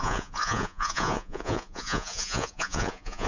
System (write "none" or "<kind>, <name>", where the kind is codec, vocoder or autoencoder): vocoder, Vocos